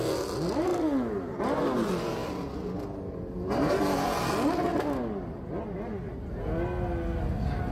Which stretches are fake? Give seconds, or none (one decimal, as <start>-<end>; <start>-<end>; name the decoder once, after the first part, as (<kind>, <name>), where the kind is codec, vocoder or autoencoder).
none